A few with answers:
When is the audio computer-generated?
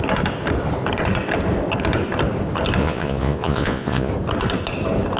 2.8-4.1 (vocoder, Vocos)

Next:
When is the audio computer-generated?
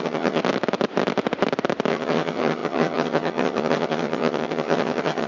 0.0-0.4 (vocoder, HiFi-GAN); 1.9-5.3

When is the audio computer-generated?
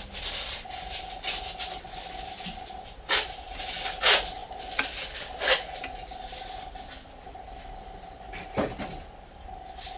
none